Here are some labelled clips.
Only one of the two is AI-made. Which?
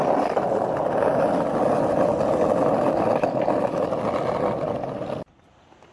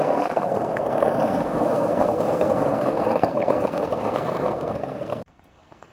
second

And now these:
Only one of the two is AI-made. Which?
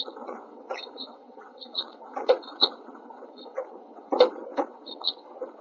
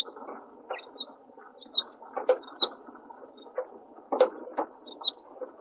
first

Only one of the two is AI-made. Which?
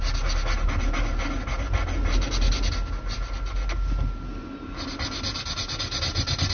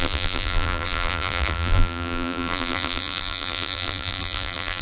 second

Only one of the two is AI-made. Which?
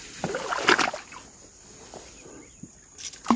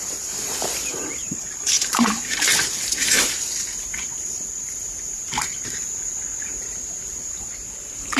second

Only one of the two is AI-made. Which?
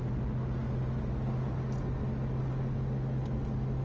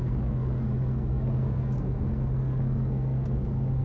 second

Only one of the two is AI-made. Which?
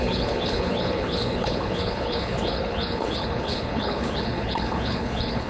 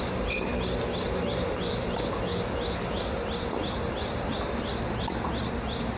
first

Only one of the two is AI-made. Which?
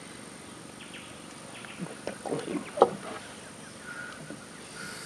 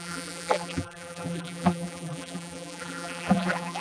second